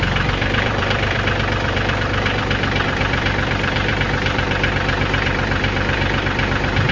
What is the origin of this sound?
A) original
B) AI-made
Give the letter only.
B